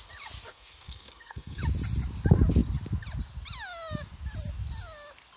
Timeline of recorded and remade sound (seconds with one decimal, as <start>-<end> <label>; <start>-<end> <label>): 0.0-0.5 recorded; 0.5-1.6 remade; 1.6-5.4 recorded